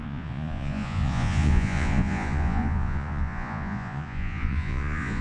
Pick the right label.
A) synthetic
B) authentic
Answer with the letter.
A